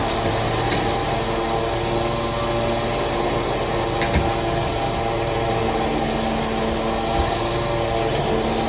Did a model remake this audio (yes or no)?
no